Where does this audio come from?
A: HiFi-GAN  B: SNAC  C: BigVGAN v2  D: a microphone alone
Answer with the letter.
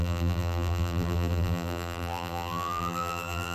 C